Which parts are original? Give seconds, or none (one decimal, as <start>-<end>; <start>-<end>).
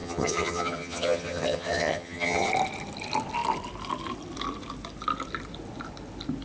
2.5-6.4